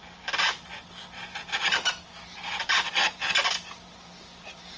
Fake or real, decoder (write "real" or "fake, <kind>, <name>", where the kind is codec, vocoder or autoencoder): real